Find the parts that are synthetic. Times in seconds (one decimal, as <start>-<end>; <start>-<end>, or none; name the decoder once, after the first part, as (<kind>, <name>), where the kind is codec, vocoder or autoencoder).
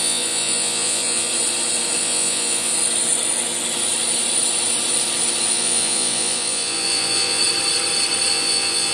0.0-1.3 (vocoder, Vocos); 2.0-2.7; 5.5-7.4; 8.3-8.9